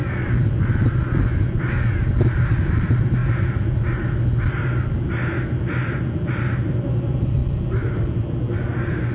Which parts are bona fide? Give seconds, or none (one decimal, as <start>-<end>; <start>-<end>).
0.0-9.1